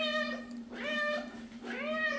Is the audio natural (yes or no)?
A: yes